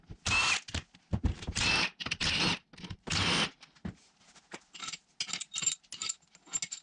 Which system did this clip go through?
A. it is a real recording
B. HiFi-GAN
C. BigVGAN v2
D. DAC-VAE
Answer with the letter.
A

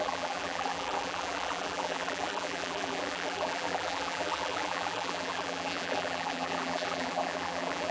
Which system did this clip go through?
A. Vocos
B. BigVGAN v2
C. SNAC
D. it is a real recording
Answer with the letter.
B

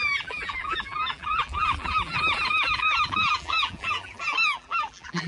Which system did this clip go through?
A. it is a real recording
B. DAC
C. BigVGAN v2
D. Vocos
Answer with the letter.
C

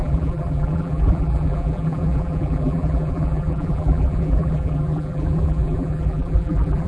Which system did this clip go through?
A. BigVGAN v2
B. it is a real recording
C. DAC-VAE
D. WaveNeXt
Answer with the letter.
A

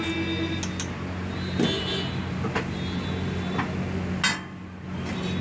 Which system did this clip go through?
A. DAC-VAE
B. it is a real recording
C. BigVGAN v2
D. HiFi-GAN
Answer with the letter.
B